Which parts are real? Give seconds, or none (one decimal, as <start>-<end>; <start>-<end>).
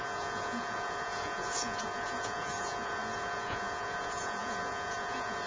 none